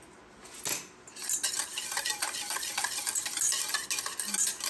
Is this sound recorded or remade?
recorded